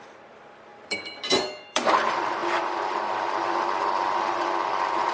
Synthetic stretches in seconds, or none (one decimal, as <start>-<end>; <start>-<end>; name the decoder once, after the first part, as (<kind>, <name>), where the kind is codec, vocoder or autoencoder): 0.0-5.1 (vocoder, BigVGAN v2)